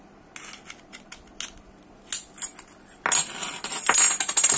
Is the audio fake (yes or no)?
no